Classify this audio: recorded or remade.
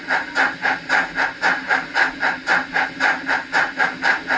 recorded